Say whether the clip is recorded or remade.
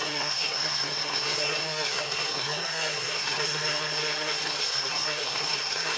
remade